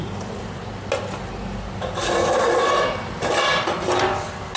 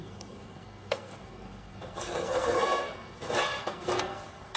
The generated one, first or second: second